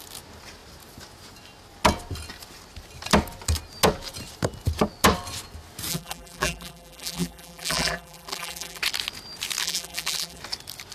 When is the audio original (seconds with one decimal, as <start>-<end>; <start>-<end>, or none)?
0.0-5.9; 8.8-9.6; 10.4-10.9